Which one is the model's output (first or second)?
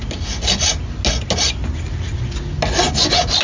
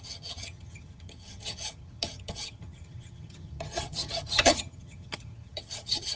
second